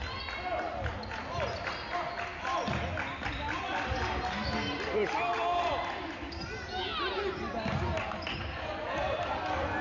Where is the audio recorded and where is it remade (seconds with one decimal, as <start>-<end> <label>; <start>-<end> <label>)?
0.0-9.8 recorded